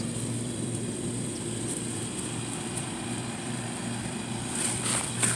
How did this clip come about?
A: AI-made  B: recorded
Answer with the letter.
A